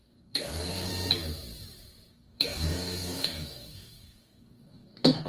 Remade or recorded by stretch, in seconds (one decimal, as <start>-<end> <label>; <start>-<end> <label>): 0.0-0.9 remade; 0.9-2.1 recorded; 2.1-5.3 remade